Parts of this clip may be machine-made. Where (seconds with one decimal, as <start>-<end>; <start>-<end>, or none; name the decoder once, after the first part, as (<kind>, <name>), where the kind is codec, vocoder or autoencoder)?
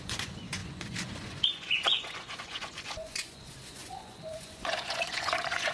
0.0-5.7 (vocoder, Vocos)